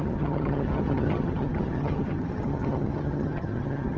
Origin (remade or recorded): remade